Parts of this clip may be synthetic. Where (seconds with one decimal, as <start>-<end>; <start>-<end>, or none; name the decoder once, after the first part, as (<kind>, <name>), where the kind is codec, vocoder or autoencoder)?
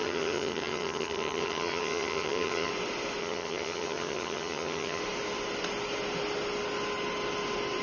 0.0-2.7 (vocoder, HiFi-GAN); 3.2-5.0